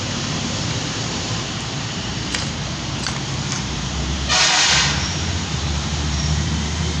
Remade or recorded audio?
remade